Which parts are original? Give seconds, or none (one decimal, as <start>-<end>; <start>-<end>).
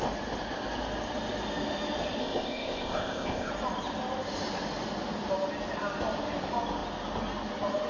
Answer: 0.0-2.2; 3.5-7.9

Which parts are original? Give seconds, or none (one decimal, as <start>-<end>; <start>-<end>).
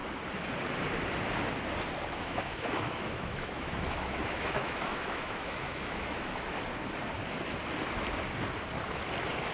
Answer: 0.0-2.2; 6.4-9.5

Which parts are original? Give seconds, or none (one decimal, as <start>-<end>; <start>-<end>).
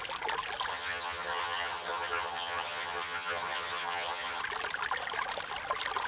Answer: 0.0-0.7; 4.4-6.1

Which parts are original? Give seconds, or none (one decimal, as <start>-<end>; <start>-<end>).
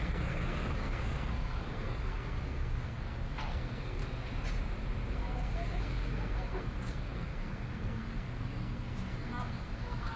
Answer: 4.0-5.1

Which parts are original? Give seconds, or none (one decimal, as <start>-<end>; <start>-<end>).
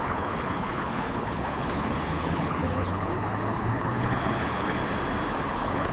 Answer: 4.8-5.3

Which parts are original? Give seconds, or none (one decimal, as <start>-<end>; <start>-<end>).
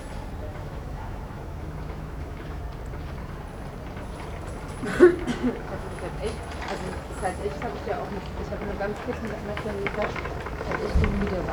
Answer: 0.0-0.5; 2.6-5.3; 6.4-8.9; 9.9-11.5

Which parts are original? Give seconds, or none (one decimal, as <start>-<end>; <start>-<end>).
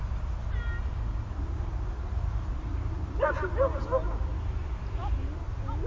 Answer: 0.0-5.9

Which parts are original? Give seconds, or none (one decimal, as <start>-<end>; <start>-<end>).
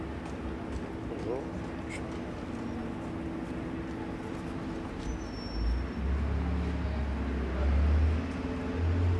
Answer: 0.0-9.2